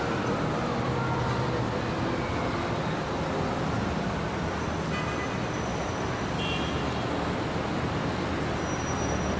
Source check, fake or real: real